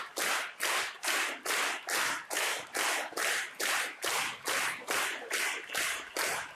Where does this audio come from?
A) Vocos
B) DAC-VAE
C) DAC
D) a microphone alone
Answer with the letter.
D